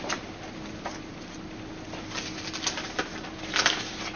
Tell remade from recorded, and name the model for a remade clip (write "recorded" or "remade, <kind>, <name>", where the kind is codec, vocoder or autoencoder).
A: recorded